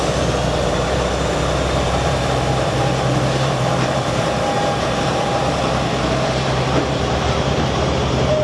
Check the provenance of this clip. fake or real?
fake